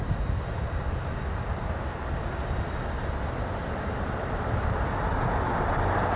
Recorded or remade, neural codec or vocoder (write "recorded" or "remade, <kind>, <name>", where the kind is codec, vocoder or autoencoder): recorded